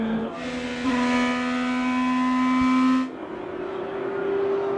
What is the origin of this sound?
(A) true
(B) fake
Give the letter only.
A